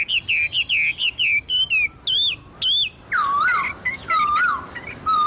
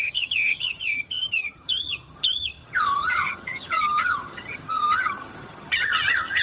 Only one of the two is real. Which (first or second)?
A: first